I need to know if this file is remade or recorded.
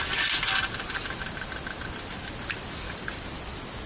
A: recorded